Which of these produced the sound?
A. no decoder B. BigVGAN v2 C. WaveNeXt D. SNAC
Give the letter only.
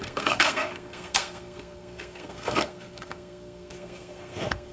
D